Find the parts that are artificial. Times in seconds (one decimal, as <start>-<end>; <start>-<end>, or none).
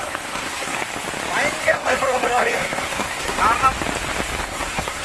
0.0-0.8; 1.6-3.4; 4.4-5.0